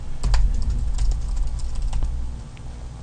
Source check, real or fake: real